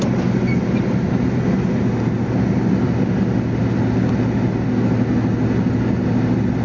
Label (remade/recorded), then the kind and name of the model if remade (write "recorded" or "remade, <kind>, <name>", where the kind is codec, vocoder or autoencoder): recorded